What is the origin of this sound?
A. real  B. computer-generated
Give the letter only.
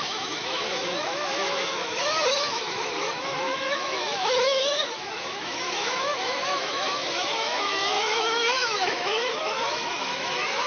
B